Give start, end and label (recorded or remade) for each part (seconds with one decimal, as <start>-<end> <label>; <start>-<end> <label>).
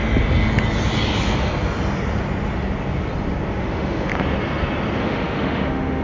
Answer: 0.0-3.6 recorded; 3.6-4.1 remade; 4.1-5.0 recorded; 5.0-6.0 remade